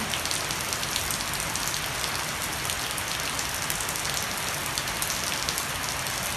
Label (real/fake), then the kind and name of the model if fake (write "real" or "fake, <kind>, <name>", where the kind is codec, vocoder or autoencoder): real